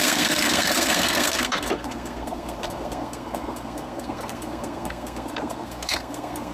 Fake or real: fake